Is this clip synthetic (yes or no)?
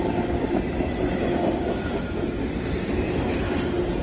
no